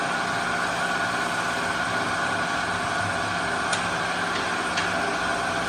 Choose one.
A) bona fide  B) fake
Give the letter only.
A